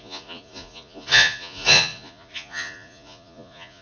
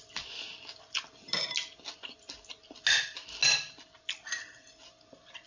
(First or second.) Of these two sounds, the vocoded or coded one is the first